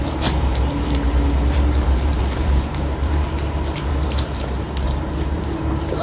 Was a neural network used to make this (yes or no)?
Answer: yes